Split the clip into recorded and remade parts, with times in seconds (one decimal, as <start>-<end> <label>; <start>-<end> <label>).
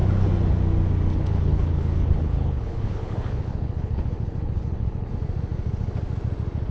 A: 0.0-1.1 recorded; 1.1-5.1 remade; 5.1-6.7 recorded